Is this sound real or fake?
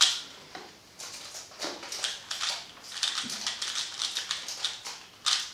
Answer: real